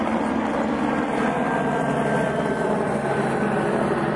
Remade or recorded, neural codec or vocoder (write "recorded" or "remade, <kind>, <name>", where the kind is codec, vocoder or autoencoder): recorded